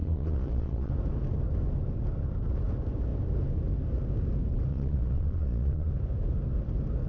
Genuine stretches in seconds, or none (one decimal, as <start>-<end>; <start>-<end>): 0.9-4.7; 5.9-7.1